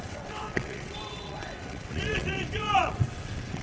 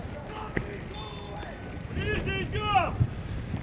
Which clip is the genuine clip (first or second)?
second